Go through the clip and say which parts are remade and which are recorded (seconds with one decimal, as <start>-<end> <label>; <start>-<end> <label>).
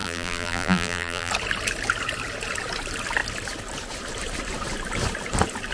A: 0.0-1.3 remade; 1.3-5.7 recorded